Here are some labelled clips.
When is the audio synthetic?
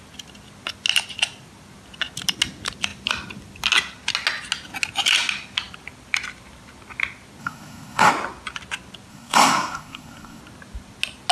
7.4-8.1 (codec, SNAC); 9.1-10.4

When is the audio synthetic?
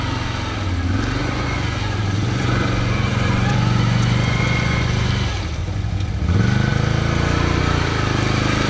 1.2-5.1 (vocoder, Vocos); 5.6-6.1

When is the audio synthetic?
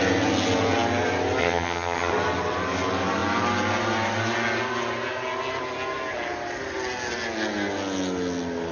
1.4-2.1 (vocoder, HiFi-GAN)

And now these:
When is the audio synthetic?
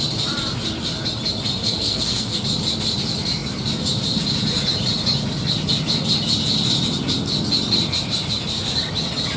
1.6-2.4 (codec, SNAC)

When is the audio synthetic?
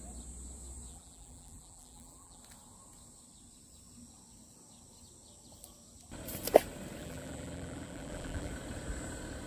0.9-2.4 (vocoder, BigVGAN v2); 7.0-8.5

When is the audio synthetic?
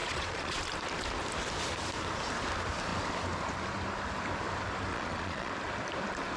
0.0-0.6 (vocoder, Vocos); 4.9-5.5